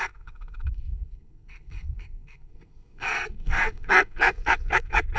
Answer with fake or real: fake